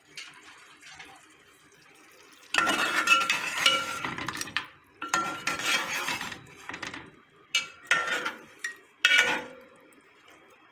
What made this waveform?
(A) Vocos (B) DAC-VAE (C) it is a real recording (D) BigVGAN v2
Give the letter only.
D